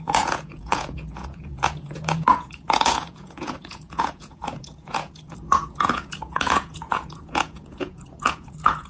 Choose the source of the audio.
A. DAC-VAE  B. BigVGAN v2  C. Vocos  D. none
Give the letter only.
C